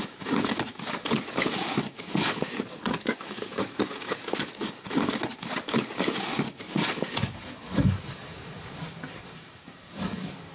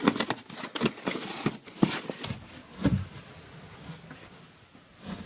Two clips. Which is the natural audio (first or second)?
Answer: second